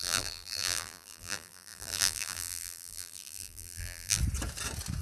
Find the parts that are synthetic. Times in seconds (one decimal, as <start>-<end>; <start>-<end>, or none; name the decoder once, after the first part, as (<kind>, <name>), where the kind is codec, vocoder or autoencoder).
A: 0.0-4.2 (vocoder, BigVGAN v2)

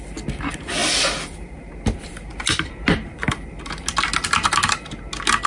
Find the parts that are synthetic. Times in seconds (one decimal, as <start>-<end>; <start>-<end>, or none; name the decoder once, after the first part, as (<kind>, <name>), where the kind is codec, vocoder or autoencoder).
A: 0.8-1.7 (vocoder, BigVGAN v2); 2.3-3.6

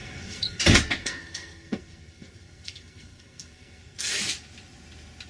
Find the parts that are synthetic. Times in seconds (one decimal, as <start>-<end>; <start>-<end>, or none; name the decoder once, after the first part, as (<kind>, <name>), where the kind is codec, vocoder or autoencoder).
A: 0.0-0.6 (codec, SNAC); 1.0-4.2

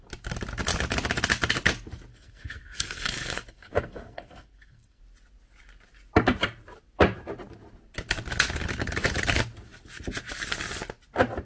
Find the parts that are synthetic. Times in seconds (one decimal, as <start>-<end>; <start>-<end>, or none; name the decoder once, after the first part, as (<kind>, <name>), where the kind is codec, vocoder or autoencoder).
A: 2.1-5.0 (codec, SNAC)

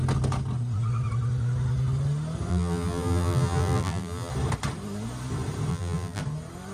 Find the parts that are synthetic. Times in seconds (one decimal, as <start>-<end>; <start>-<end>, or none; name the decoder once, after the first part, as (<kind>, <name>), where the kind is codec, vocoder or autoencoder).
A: 2.5-4.3 (vocoder, BigVGAN v2); 5.7-6.2

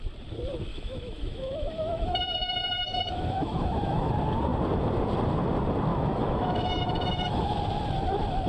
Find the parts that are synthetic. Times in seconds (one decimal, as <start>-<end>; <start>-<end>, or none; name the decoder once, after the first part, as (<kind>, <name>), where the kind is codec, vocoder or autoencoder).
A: 0.7-4.1 (autoencoder, DAC-VAE); 5.9-7.6

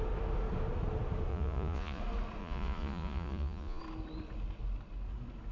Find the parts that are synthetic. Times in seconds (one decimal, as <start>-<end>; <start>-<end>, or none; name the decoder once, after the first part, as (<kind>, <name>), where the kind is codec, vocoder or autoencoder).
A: 1.3-2.0 (vocoder, Vocos); 2.4-3.8